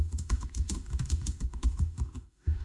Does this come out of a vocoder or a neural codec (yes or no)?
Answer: yes